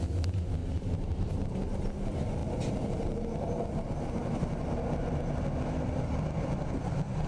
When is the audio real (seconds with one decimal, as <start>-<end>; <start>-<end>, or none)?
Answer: 0.0-0.6; 1.9-2.4; 4.4-7.3

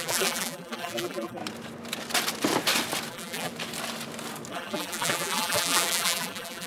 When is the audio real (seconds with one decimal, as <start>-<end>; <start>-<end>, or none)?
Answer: 1.4-3.1; 3.5-4.5

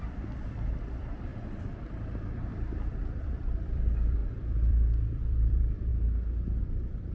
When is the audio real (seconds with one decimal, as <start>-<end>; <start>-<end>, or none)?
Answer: 5.9-6.6

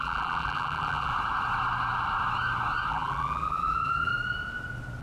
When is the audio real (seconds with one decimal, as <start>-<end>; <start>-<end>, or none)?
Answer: 1.1-2.9; 4.1-5.0

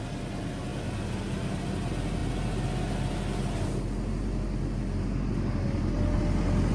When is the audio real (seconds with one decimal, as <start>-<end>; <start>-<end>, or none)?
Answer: 0.0-6.7

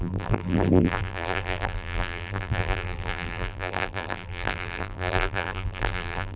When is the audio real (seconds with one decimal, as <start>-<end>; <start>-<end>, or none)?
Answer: none

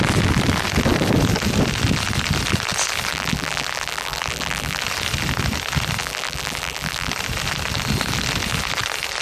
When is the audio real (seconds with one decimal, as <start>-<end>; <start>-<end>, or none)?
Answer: 0.0-3.1; 4.8-6.0; 7.1-9.2

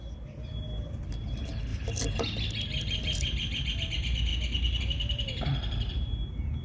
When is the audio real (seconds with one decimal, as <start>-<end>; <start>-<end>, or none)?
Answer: 0.0-6.6